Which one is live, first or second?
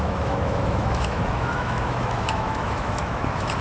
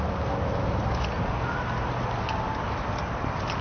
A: second